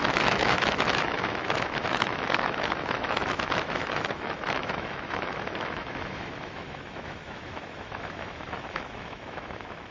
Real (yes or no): no